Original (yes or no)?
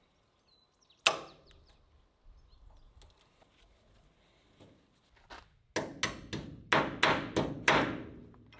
yes